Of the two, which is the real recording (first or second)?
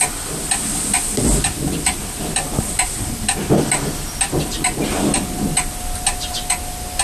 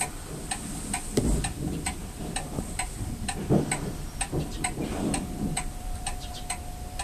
first